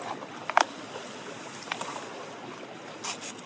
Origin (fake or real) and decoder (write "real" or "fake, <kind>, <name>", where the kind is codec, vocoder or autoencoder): real